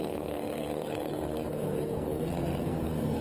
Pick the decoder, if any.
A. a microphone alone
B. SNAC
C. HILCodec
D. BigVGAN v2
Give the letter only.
B